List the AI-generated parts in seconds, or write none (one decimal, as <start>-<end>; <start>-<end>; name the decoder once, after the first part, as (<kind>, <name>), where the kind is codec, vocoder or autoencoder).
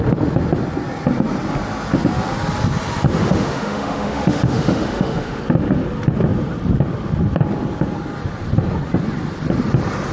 3.2-5.4 (autoencoder, DAC-VAE)